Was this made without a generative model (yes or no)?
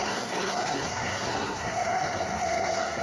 no